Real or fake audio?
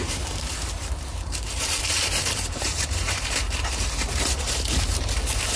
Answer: fake